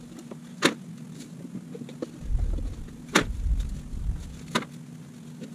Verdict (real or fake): real